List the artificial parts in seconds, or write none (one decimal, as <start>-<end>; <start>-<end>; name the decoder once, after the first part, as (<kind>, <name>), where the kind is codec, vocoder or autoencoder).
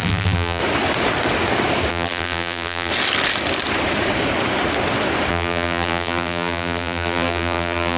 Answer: 0.0-0.6 (vocoder, BigVGAN v2); 1.9-2.9; 5.3-8.0